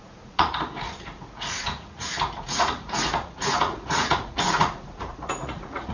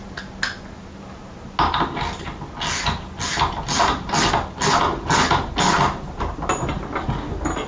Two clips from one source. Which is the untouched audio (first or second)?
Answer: second